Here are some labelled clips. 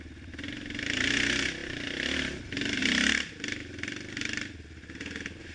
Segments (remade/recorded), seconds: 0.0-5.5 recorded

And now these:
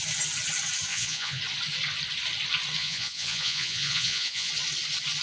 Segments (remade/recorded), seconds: 0.0-0.9 recorded; 0.9-1.4 remade; 1.4-2.8 recorded; 2.8-4.5 remade; 4.5-5.2 recorded

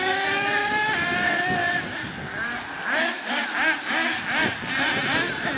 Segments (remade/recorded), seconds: 0.0-5.6 recorded

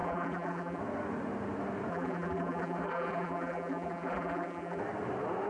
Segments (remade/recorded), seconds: 0.0-0.8 remade; 0.8-1.9 recorded; 1.9-4.8 remade; 4.8-5.5 recorded

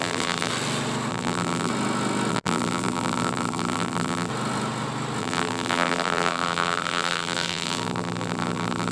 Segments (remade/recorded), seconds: 0.0-0.5 remade; 0.5-1.1 recorded; 1.1-1.7 remade; 1.7-2.3 recorded; 2.3-4.3 remade; 4.3-5.2 recorded; 5.2-8.9 remade

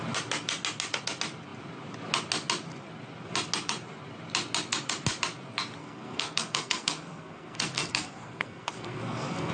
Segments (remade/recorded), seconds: 0.0-5.8 recorded; 5.8-9.5 remade

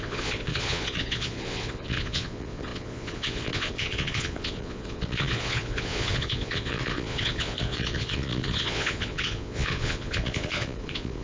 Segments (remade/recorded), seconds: 0.0-11.2 remade